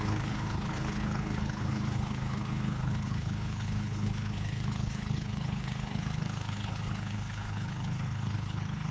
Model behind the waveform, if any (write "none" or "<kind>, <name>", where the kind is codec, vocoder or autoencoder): codec, HILCodec